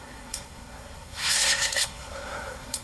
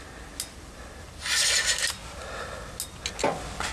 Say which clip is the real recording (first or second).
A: second